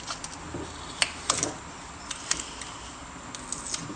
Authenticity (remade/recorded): recorded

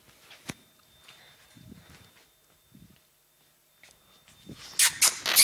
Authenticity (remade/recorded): recorded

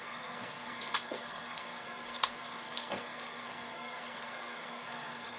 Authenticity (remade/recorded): remade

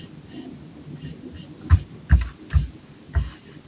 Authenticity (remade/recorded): recorded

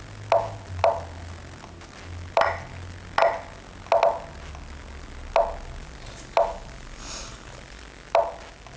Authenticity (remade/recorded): recorded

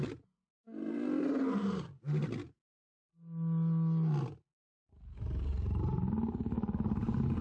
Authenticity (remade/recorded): recorded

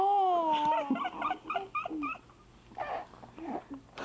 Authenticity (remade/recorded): recorded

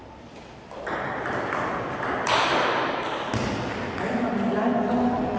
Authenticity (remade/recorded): recorded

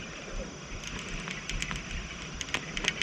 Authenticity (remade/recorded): recorded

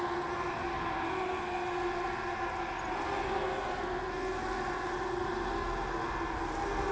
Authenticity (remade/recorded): recorded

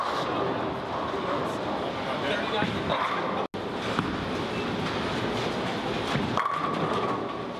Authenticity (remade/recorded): recorded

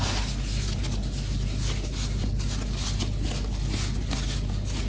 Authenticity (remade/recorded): recorded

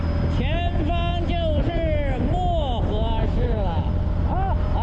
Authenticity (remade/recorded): recorded